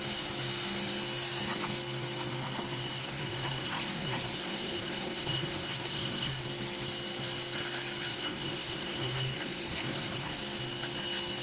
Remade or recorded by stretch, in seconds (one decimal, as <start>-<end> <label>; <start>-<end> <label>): 0.0-3.0 recorded; 3.0-6.4 remade; 6.4-8.1 recorded; 8.1-10.4 remade; 10.4-11.4 recorded